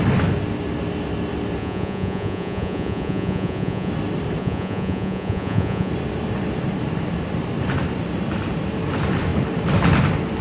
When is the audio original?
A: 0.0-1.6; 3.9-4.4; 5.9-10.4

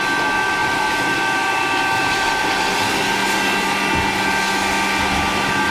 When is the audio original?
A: 0.0-0.6; 2.4-5.7

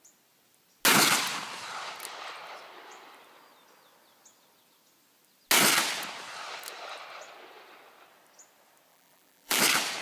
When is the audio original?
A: 0.0-8.9; 9.6-10.0

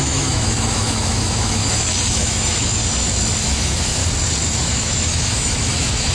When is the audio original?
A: 1.6-2.1; 2.8-3.4; 4.0-4.6